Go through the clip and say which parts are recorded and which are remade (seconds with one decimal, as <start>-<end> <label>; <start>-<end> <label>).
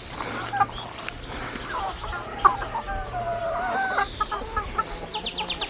0.0-3.4 recorded; 3.4-4.8 remade; 4.8-5.7 recorded